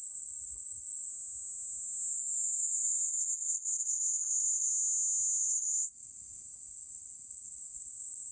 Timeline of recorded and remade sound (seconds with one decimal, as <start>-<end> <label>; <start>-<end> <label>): 0.0-1.1 remade; 1.1-2.1 recorded; 2.1-4.7 remade; 4.7-5.4 recorded; 5.4-8.3 remade